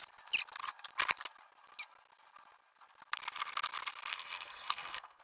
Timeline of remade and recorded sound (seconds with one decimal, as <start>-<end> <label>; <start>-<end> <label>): 0.0-4.1 recorded; 4.1-5.2 remade